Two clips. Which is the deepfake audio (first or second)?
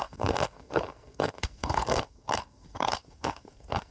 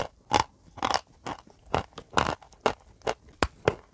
first